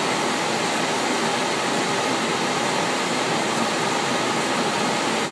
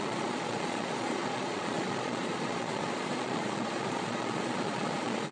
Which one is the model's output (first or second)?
second